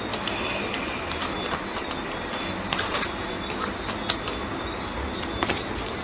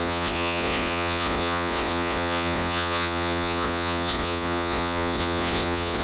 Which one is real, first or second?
first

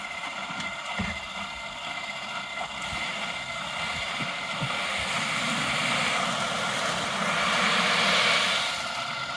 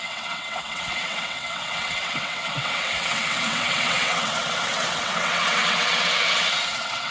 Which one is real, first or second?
first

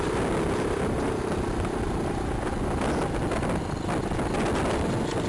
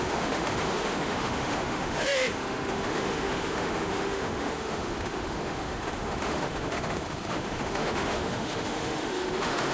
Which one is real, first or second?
first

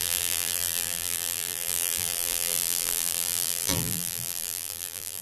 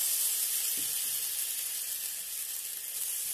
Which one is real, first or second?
second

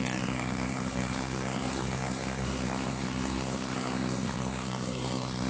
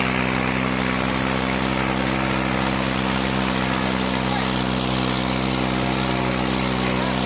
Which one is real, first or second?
second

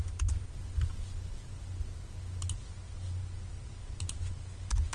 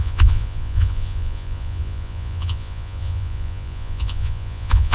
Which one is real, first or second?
first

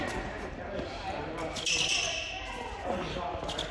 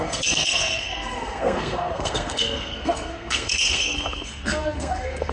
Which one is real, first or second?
first